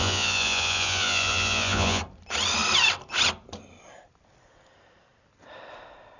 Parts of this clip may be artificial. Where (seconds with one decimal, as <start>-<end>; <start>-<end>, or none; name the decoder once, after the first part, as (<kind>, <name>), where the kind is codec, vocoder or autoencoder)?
0.0-2.0 (vocoder, Vocos)